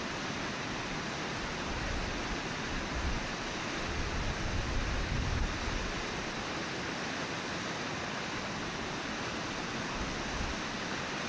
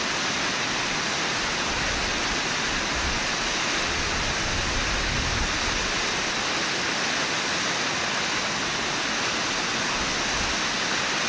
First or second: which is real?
second